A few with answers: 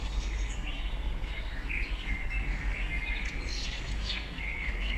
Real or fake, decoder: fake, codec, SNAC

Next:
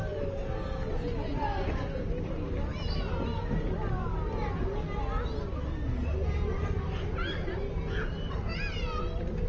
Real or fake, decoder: real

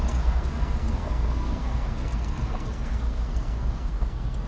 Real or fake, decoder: fake, codec, SNAC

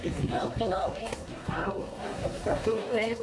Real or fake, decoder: fake, codec, SNAC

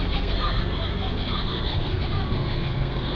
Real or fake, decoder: fake, codec, SNAC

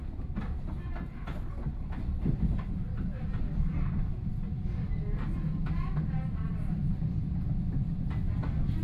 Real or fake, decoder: real